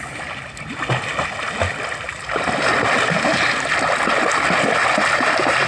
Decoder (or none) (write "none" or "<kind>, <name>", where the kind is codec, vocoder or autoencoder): none